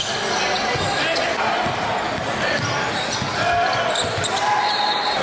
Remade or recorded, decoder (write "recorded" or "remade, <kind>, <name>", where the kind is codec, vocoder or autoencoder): recorded